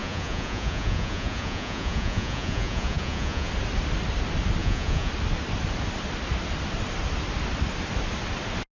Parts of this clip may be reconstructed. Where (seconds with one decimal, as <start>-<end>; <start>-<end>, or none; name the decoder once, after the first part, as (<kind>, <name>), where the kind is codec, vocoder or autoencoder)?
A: 0.0-3.5 (vocoder, Vocos); 4.6-5.1